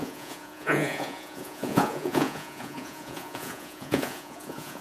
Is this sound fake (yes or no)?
yes